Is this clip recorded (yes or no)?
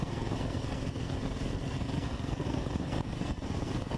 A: no